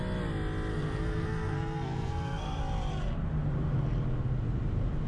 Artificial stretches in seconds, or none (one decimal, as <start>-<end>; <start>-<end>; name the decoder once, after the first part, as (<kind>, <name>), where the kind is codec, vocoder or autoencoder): 0.7-2.6 (codec, SNAC)